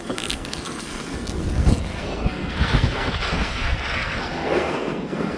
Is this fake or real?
fake